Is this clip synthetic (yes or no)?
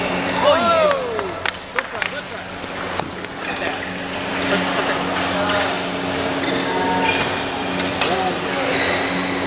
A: no